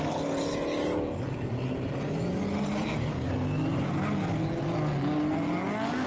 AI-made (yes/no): no